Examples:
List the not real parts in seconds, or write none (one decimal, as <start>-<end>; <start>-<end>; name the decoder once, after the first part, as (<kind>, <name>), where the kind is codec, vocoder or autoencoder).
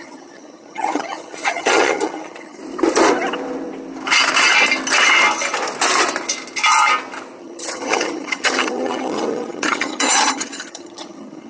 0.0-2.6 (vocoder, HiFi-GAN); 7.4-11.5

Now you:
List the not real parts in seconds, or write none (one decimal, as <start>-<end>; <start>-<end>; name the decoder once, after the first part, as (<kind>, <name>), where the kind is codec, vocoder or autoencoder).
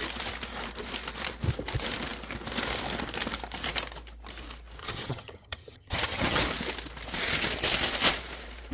4.8-6.4 (vocoder, HiFi-GAN)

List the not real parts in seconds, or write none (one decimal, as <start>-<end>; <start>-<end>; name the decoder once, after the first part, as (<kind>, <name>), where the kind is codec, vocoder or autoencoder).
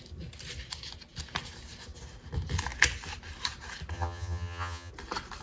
3.9-4.9 (vocoder, HiFi-GAN)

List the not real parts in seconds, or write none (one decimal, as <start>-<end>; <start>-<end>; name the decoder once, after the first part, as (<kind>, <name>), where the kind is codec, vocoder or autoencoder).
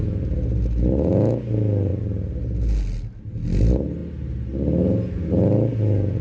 none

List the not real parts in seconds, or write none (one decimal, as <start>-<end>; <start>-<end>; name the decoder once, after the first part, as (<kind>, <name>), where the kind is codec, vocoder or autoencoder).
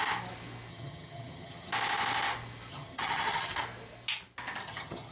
0.7-1.7 (vocoder, HiFi-GAN); 2.7-3.5; 4.6-5.1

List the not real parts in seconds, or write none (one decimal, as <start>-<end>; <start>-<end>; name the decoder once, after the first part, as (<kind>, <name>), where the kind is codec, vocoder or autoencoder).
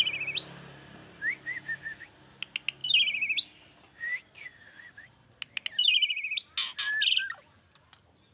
none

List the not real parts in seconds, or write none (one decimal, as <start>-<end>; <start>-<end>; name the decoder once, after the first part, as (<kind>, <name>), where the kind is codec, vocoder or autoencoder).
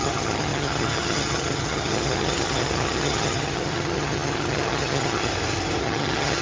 0.0-5.3 (vocoder, HiFi-GAN); 5.8-6.4